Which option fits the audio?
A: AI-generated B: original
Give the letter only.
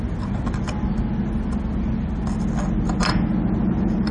B